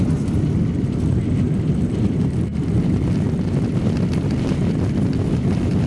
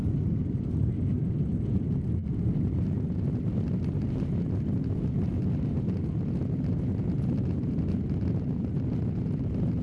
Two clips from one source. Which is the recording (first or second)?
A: second